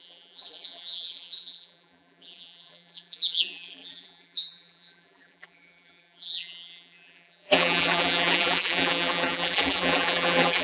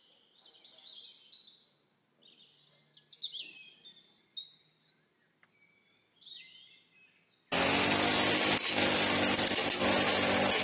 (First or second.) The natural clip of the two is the second